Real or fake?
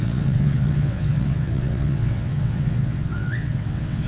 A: fake